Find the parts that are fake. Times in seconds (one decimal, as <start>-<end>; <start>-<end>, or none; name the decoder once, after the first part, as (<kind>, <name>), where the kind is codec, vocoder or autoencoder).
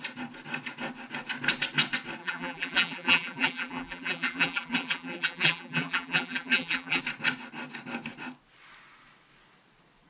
2.2-7.0 (vocoder, BigVGAN v2)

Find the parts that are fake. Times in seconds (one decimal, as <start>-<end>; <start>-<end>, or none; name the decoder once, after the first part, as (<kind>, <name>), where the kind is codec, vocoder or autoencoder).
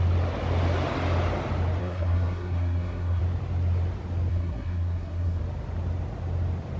1.8-3.2 (codec, SNAC); 4.3-5.4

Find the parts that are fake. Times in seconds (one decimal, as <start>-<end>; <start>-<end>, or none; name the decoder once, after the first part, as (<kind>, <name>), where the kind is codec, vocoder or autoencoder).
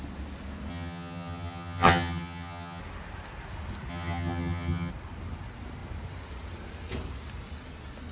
0.7-2.8 (vocoder, HiFi-GAN); 3.9-4.9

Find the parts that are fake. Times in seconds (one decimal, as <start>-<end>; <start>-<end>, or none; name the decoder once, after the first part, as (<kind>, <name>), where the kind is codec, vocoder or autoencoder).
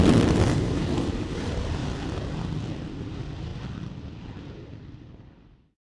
0.0-1.8 (vocoder, BigVGAN v2); 3.1-5.9